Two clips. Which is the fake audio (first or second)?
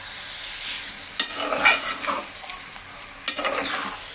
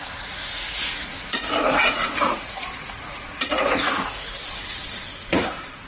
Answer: second